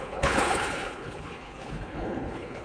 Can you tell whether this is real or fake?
fake